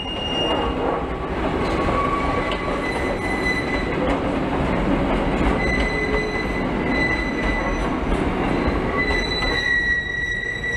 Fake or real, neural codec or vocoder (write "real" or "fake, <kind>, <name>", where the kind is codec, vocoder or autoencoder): real